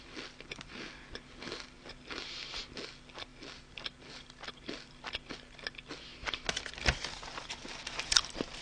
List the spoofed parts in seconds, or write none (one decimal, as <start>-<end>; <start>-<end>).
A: none